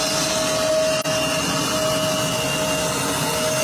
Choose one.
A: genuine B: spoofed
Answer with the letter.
A